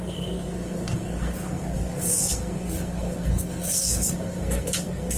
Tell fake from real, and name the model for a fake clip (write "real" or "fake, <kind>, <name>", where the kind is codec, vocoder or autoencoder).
fake, codec, SNAC